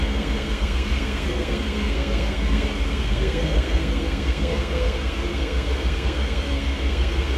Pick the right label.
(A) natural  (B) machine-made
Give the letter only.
B